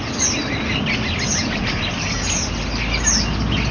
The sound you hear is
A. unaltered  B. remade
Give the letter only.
A